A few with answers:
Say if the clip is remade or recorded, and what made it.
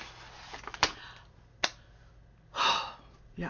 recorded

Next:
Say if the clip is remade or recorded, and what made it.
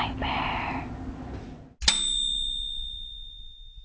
recorded